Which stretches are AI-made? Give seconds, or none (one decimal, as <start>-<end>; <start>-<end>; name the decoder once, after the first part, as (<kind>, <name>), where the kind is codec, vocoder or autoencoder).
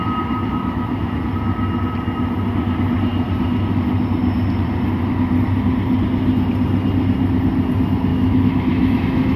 0.5-1.3 (autoencoder, DAC-VAE); 8.1-9.4